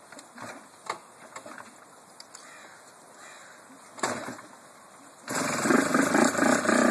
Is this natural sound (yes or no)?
yes